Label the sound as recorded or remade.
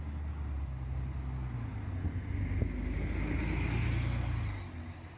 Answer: recorded